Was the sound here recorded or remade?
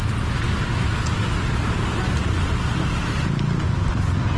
recorded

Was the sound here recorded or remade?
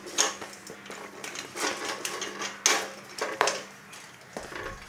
recorded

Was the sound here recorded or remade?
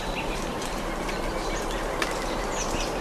recorded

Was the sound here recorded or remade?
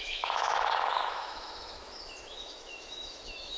remade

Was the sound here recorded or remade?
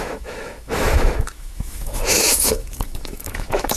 remade